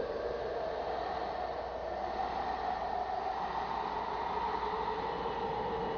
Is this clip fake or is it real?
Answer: real